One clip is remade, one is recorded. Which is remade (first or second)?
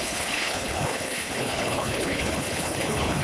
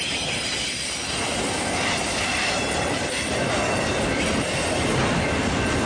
first